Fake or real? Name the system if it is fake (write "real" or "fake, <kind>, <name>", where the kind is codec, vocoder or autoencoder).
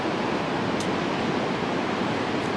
real